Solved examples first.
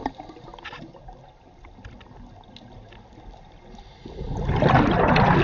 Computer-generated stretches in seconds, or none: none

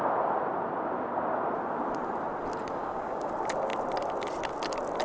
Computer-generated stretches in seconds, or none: 2.8-3.3

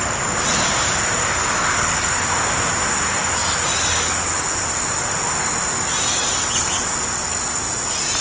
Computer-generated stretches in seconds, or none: 1.2-2.1

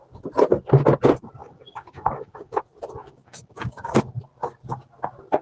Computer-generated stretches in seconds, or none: 1.4-2.6; 3.0-4.0

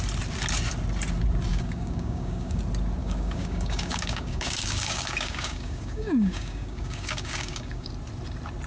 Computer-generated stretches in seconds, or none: 1.5-2.6; 3.0-7.9

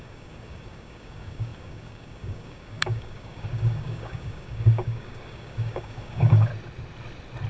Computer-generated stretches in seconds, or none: 0.0-6.5